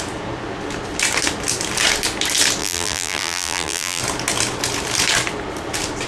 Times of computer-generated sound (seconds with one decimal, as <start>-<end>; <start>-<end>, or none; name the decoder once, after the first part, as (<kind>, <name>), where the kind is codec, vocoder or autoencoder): 2.6-4.0 (vocoder, BigVGAN v2)